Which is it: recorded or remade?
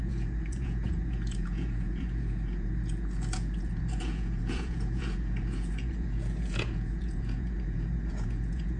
remade